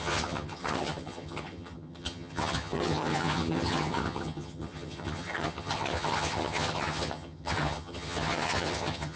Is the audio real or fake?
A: fake